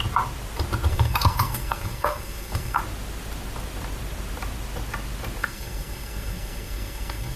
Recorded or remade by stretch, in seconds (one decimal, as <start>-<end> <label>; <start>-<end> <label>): 0.0-0.9 recorded; 0.9-2.8 remade; 2.8-5.4 recorded; 5.4-7.4 remade